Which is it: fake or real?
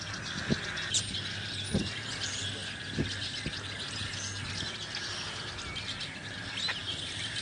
real